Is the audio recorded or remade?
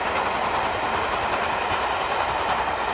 recorded